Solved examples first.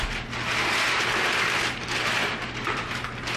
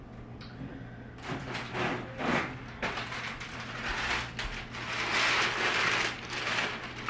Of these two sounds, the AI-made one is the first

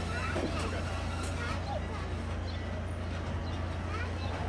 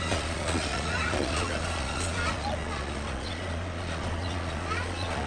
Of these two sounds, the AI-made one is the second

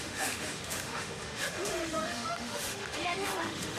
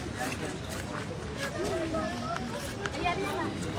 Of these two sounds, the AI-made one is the first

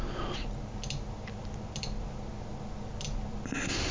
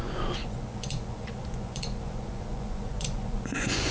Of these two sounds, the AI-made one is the second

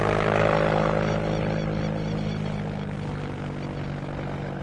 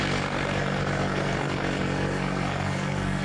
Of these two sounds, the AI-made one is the second